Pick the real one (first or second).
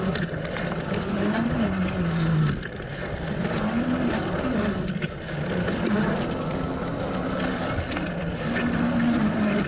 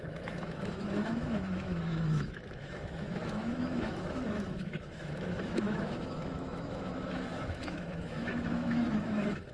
first